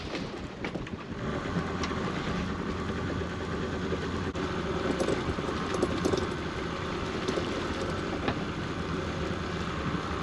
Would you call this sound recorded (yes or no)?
yes